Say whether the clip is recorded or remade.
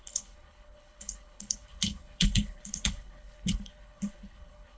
remade